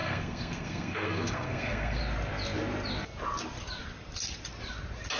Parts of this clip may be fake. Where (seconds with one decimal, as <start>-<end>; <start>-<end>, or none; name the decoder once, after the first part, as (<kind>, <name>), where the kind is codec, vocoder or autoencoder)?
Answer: 0.0-2.0 (codec, SNAC)